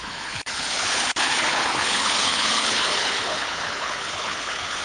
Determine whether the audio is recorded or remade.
remade